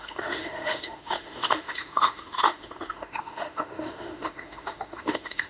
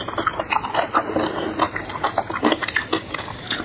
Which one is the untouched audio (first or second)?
second